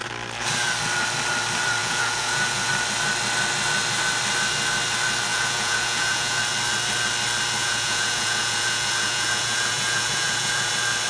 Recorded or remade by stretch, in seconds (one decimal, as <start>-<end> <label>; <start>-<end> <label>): 0.0-1.8 recorded; 1.8-2.7 remade; 2.7-5.3 recorded; 5.3-6.4 remade; 6.4-7.6 recorded; 7.6-10.7 remade; 10.7-11.1 recorded